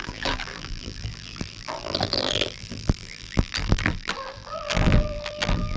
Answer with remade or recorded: remade